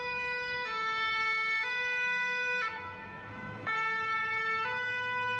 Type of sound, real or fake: fake